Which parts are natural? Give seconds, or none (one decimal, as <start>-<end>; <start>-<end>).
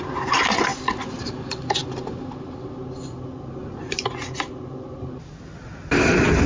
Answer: 0.0-6.5